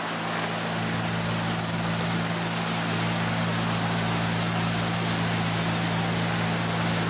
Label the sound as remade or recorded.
recorded